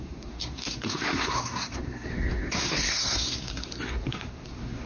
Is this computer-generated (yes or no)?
yes